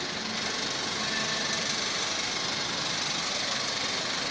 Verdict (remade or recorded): recorded